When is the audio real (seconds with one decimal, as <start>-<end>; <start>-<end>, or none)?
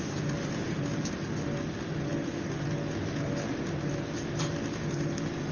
0.0-5.5